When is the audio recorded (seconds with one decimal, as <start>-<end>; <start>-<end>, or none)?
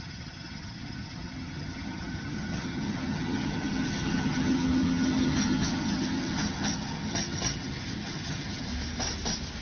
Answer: 8.7-9.6